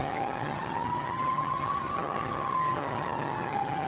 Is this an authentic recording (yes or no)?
no